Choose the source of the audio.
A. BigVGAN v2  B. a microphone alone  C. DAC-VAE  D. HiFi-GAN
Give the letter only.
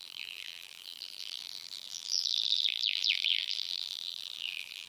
A